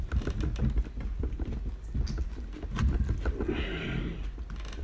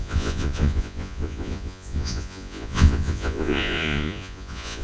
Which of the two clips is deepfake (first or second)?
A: second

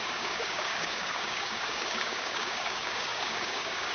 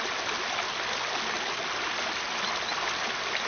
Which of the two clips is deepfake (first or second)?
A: first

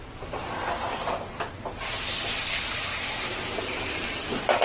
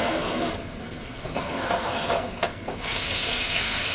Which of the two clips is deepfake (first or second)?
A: second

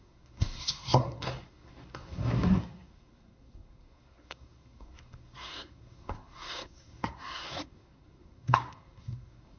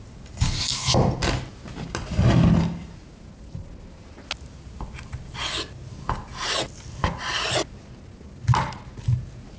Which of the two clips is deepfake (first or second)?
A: first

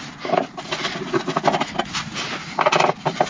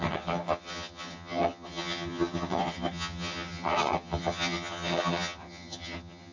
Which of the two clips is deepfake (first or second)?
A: second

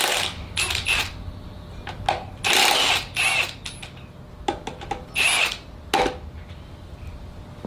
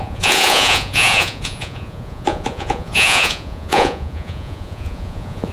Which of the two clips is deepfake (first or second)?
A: second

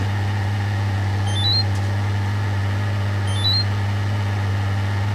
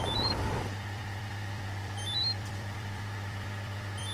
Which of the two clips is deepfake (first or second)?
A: second